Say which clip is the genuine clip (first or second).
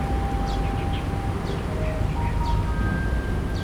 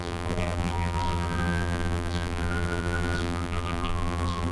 first